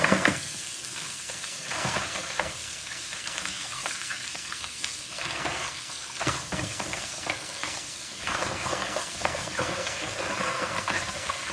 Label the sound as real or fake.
fake